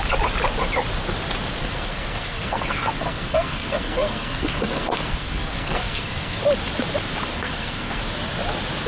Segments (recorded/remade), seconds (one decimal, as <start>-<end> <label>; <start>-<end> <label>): 0.0-1.6 recorded; 1.6-6.4 remade; 6.4-7.3 recorded; 7.3-8.0 remade; 8.0-8.9 recorded